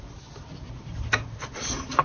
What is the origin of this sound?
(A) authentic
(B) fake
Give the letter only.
A